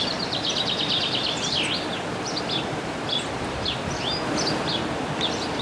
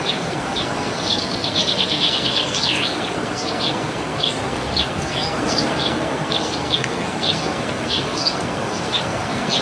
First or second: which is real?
first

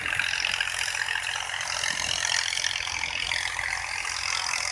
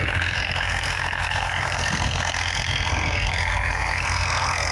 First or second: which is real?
first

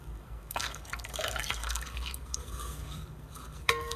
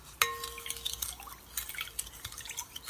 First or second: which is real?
second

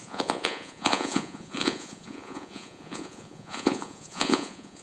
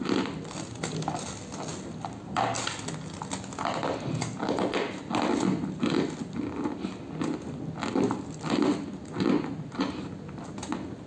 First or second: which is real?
second